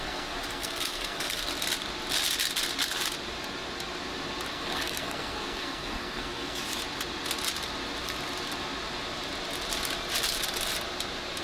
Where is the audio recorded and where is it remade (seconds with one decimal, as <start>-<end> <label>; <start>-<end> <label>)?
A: 0.0-1.5 remade; 1.5-4.5 recorded; 4.5-6.6 remade; 6.6-11.4 recorded

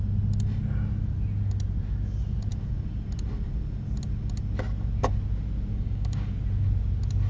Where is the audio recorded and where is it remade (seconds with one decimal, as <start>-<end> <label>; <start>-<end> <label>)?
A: 0.0-5.7 recorded; 5.7-6.3 remade; 6.3-7.3 recorded

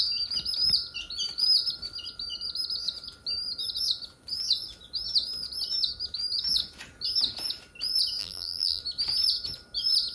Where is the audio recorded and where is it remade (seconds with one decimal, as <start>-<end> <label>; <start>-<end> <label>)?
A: 0.0-8.2 recorded; 8.2-8.8 remade; 8.8-10.1 recorded

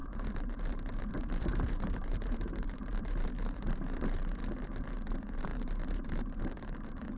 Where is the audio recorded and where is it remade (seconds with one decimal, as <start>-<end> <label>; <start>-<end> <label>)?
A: 0.0-4.4 remade; 4.4-4.9 recorded; 4.9-7.2 remade

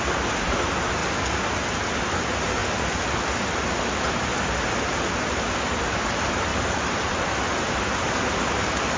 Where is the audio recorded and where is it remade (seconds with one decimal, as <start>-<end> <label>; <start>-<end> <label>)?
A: 0.0-1.0 remade; 1.0-2.0 recorded; 2.0-2.6 remade; 2.6-6.0 recorded; 6.0-9.0 remade

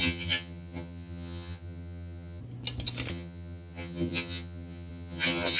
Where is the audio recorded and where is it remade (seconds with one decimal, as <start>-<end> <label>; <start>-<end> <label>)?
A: 0.0-2.4 remade; 2.4-3.1 recorded; 3.1-5.6 remade

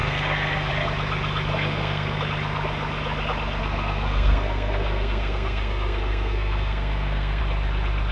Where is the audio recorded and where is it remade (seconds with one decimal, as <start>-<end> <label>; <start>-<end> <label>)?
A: 0.0-0.7 remade; 0.7-1.5 recorded; 1.5-2.2 remade; 2.2-3.6 recorded; 3.6-7.4 remade; 7.4-8.1 recorded

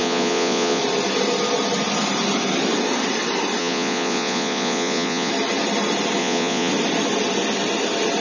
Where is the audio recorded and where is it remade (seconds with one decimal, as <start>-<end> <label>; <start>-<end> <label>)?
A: 0.0-0.8 remade; 0.8-3.6 recorded; 3.6-5.3 remade; 5.3-6.2 recorded; 6.2-6.7 remade; 6.7-8.2 recorded